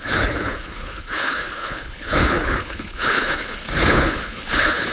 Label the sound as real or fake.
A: fake